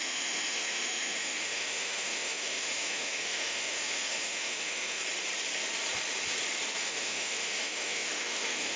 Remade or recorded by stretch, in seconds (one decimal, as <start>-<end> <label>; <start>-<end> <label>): 0.0-5.0 remade; 5.0-6.8 recorded; 6.8-8.8 remade